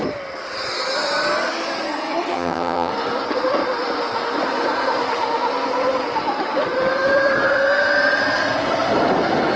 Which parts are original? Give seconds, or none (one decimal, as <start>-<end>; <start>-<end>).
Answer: 0.0-2.3; 2.9-9.6